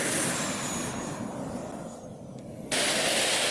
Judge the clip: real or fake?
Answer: real